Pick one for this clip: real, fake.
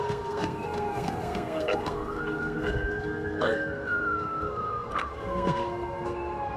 fake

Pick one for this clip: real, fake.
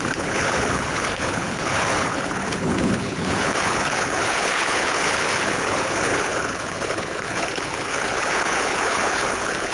fake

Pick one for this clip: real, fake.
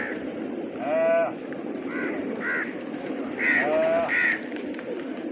real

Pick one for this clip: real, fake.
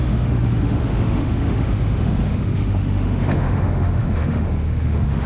fake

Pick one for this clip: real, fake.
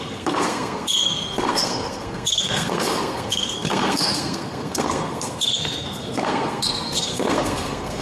fake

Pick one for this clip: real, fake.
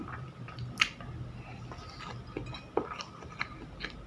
real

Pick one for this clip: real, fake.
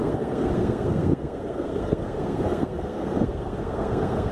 fake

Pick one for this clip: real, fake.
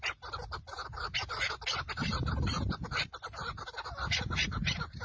real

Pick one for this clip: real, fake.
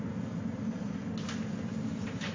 real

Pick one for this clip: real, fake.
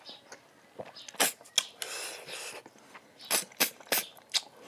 real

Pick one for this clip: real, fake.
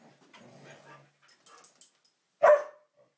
real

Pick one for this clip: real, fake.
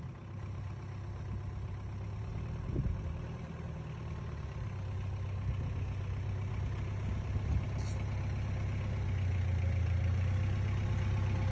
real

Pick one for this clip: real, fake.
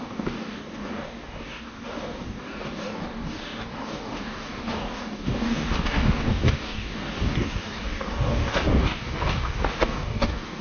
fake